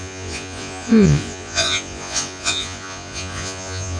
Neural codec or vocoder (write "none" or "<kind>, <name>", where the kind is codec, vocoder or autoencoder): vocoder, Vocos